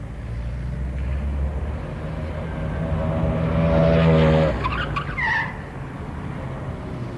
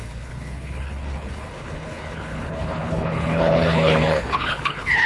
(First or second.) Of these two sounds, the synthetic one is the second